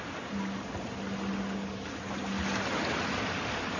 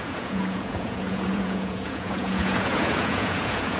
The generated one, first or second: second